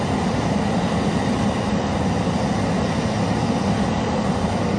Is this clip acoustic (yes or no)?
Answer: yes